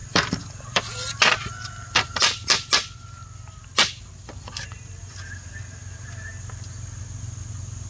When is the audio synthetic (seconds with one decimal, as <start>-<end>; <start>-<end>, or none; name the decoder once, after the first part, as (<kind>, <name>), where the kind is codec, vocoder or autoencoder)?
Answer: 0.0-0.8 (vocoder, BigVGAN v2)